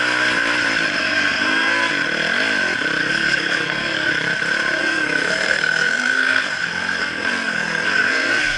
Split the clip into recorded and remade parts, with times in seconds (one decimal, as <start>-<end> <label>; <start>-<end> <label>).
0.0-1.0 recorded; 1.0-1.9 remade; 1.9-3.0 recorded; 3.0-4.1 remade; 4.1-4.8 recorded; 4.8-8.6 remade